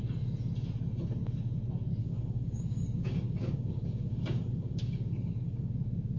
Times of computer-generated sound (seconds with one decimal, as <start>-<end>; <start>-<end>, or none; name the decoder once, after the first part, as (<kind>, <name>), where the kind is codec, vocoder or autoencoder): 2.0-5.7 (codec, DAC)